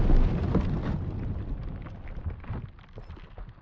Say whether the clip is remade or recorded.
recorded